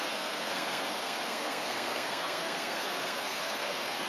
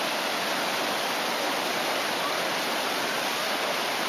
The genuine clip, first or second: second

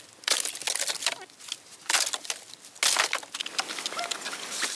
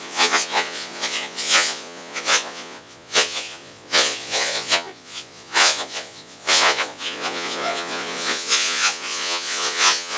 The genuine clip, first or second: first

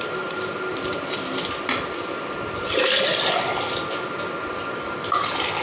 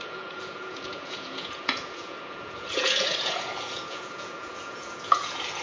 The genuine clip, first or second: first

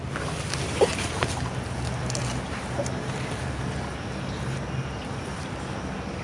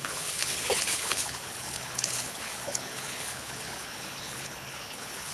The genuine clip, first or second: first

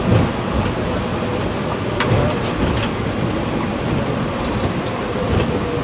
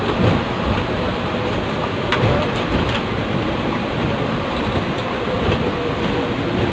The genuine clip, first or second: first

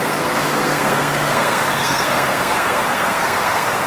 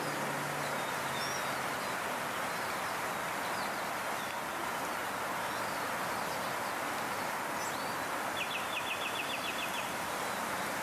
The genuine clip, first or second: second